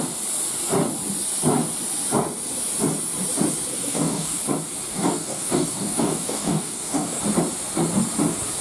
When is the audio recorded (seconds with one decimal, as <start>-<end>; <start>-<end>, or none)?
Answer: 0.0-3.7; 4.4-4.9; 7.2-8.6